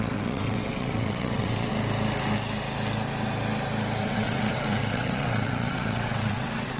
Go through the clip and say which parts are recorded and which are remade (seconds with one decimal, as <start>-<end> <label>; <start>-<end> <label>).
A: 0.0-1.7 remade; 1.7-4.0 recorded; 4.0-6.8 remade